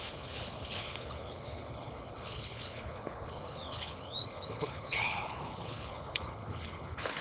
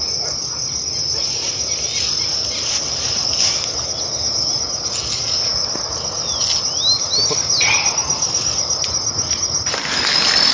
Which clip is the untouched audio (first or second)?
second